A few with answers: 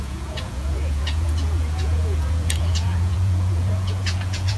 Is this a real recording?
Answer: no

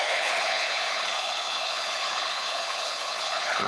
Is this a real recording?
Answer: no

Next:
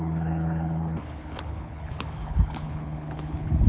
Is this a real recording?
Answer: no